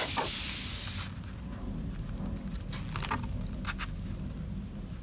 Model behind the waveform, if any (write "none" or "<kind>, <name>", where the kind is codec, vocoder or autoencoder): none